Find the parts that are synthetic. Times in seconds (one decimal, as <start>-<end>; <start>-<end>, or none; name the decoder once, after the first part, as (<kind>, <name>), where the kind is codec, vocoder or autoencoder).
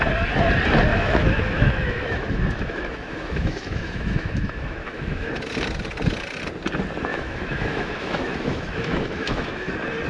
0.9-5.3 (autoencoder, DAC-VAE); 7.1-9.7